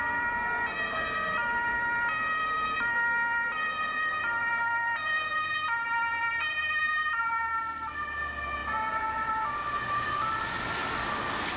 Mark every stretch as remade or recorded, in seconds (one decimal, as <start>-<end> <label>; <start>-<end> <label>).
0.0-11.6 recorded